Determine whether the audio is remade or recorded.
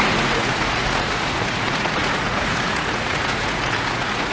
remade